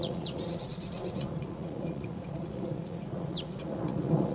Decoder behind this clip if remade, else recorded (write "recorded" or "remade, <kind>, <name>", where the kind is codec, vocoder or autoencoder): remade, vocoder, Vocos